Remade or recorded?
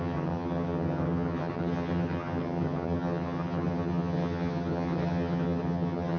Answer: remade